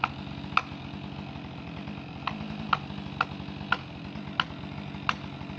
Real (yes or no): yes